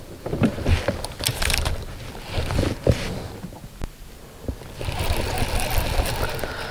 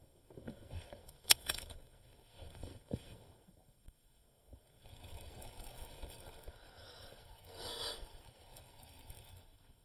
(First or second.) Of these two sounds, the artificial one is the second